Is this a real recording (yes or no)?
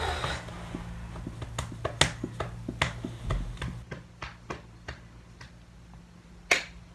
yes